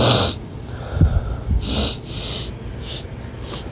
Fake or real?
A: real